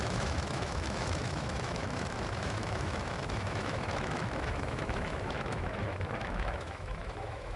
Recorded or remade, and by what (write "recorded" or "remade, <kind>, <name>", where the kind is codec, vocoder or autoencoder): remade, autoencoder, DAC-VAE